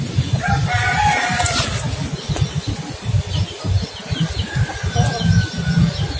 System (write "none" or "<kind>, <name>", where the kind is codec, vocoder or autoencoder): none